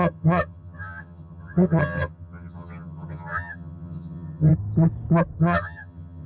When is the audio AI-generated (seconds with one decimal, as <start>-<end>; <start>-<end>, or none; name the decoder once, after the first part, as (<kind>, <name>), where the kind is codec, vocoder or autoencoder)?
0.0-4.5 (vocoder, HiFi-GAN); 5.4-6.3